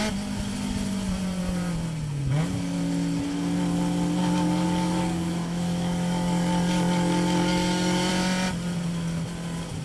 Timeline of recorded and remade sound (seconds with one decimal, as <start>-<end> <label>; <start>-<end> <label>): 0.0-4.2 recorded; 4.2-8.1 remade; 8.1-9.8 recorded